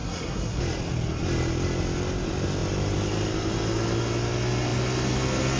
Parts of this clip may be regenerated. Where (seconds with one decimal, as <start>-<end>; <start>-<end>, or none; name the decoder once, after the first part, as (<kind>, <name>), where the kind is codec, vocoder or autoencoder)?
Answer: 0.0-0.6 (codec, SNAC)